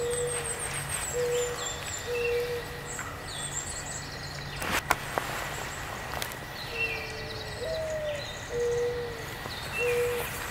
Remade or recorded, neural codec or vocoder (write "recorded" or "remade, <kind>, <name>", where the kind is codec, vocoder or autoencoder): recorded